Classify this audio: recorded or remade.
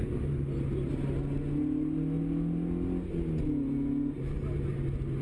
recorded